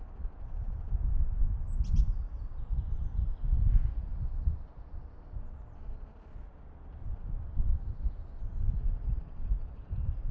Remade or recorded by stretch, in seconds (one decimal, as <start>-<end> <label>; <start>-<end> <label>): 0.0-10.3 recorded